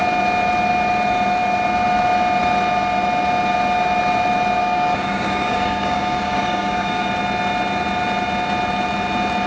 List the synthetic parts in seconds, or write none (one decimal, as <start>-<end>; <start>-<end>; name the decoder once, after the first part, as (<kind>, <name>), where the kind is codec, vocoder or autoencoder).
4.6-7.1 (codec, DAC)

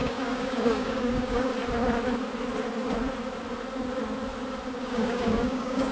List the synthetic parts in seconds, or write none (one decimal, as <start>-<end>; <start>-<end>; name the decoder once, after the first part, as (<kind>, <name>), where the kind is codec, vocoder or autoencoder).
0.0-1.5 (codec, DAC); 4.8-5.9